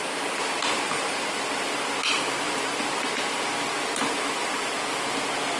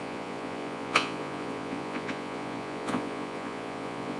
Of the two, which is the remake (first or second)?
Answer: second